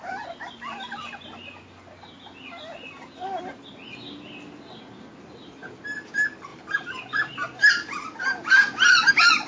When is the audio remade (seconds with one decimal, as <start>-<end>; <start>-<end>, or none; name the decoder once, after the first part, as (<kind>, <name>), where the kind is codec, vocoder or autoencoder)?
6.5-9.1 (vocoder, BigVGAN v2)